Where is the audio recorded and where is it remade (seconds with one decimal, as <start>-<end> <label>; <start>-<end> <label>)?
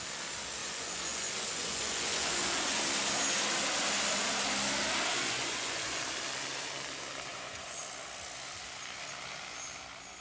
0.0-0.6 recorded; 0.6-2.8 remade; 2.8-5.1 recorded; 5.1-6.0 remade; 6.0-7.3 recorded; 7.3-7.8 remade; 7.8-10.2 recorded